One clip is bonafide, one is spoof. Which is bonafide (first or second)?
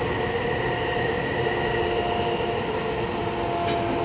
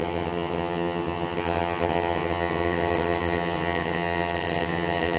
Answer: first